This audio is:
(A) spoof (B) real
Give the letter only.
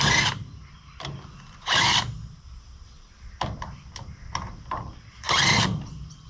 B